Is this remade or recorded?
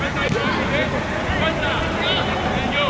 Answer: recorded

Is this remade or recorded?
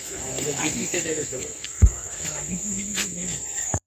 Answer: remade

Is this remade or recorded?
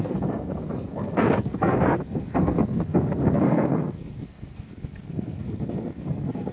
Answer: remade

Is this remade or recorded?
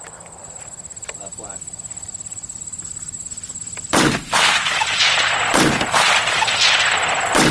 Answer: recorded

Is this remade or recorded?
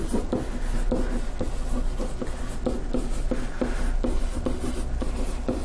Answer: recorded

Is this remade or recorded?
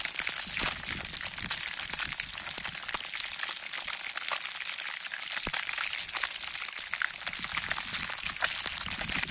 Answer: recorded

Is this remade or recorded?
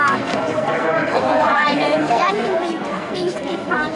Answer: remade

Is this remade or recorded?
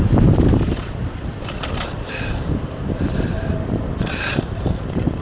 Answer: recorded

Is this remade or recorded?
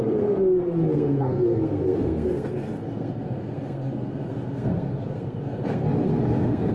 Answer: remade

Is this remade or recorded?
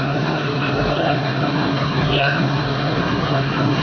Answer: remade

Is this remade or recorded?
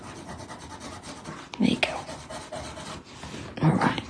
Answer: recorded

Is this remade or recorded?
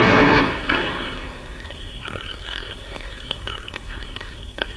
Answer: remade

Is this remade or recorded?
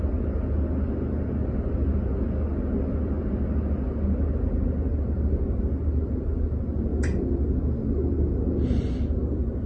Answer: recorded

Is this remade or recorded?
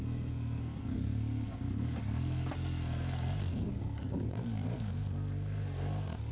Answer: remade